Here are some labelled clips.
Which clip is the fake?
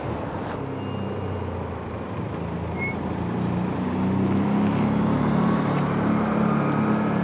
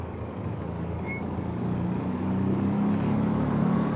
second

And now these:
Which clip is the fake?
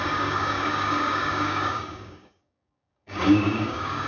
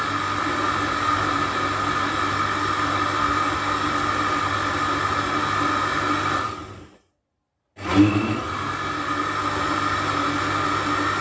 first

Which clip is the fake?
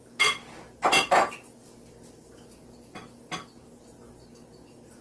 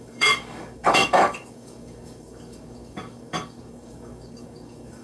second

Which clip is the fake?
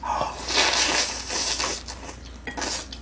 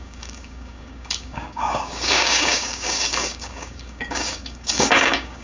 second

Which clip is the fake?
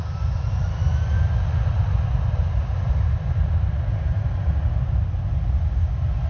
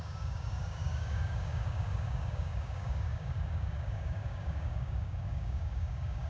second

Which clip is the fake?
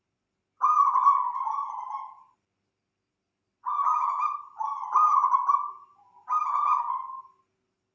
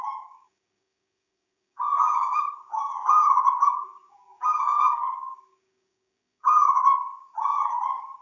second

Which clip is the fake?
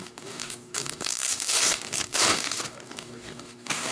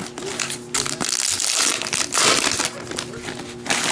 first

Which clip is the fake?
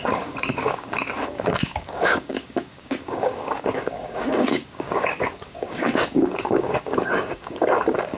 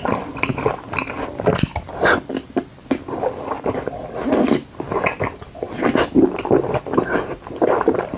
first